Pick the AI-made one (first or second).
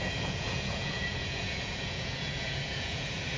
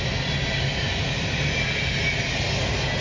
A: first